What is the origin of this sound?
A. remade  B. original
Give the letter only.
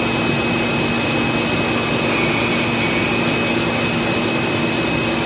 B